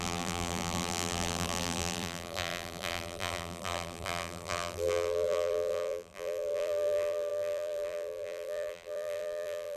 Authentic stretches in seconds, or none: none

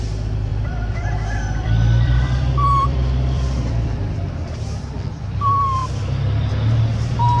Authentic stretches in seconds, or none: 0.0-0.5; 4.9-5.8; 6.5-7.4

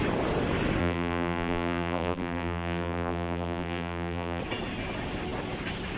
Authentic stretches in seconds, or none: 0.0-0.8; 4.4-6.0

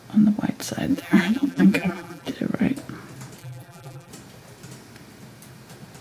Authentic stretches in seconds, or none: 0.0-0.9; 2.3-3.4; 4.1-6.0

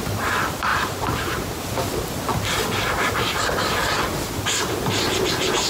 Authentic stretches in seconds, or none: 0.0-0.7; 1.6-5.7

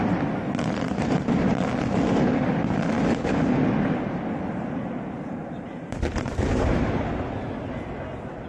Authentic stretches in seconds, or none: 0.0-5.4; 7.1-8.5

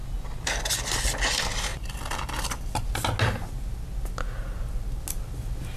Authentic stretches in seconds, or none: 0.0-1.7; 2.8-5.8